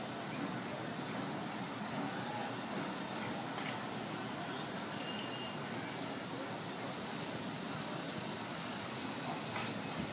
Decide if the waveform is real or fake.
real